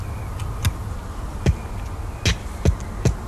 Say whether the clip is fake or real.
real